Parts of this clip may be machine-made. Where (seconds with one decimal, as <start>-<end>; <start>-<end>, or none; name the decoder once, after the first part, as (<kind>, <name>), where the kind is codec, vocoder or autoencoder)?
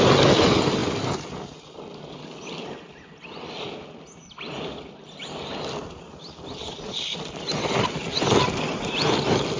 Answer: none